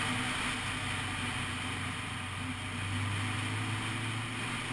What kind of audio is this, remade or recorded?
recorded